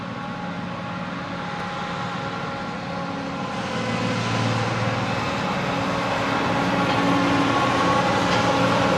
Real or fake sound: real